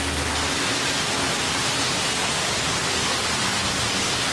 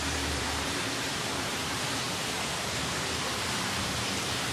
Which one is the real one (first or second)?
first